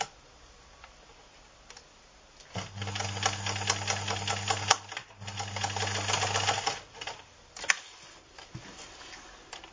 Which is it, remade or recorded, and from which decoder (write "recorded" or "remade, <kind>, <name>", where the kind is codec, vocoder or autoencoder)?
recorded